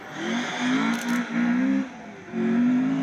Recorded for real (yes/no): yes